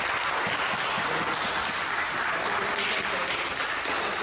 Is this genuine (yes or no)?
yes